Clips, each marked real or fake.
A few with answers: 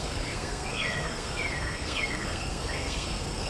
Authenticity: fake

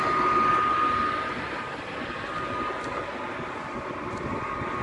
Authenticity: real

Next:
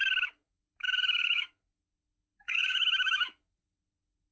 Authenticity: fake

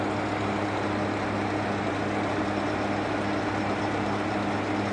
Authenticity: real